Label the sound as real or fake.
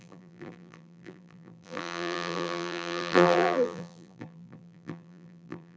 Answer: fake